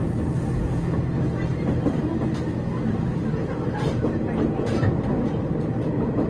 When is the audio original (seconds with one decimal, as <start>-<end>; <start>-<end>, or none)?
0.0-1.5; 2.0-3.4

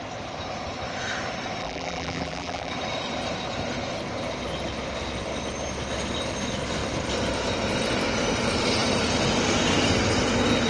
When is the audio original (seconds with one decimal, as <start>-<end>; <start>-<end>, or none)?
0.0-1.6; 2.7-10.7

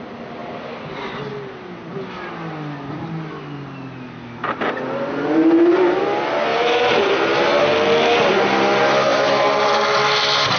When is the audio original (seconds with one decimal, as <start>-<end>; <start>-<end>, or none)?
0.0-6.5; 7.4-9.1; 10.0-10.6

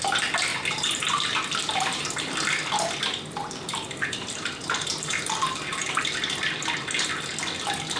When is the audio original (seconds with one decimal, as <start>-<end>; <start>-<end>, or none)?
0.0-0.5; 2.3-3.4; 6.0-8.0

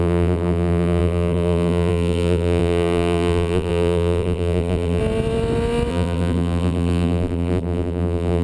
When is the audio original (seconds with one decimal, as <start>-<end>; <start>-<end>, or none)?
5.0-5.9

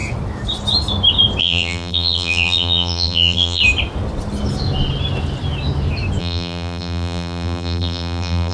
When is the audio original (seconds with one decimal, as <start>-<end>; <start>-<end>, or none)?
0.0-1.4; 3.6-6.2

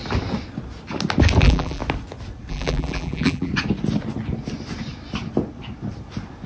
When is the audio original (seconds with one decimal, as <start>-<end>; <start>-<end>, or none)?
0.0-1.4; 1.8-2.5; 3.5-6.5